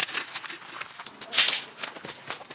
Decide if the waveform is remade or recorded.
recorded